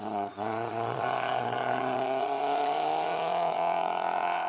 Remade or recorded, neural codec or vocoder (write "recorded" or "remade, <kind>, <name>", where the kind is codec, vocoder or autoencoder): remade, vocoder, Vocos